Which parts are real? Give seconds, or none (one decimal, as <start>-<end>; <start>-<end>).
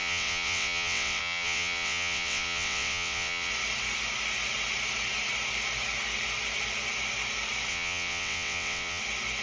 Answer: 3.5-7.7; 9.0-9.4